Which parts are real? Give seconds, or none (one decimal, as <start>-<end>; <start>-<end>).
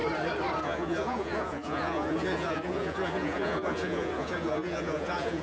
0.0-0.6